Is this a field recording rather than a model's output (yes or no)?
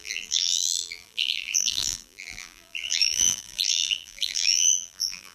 no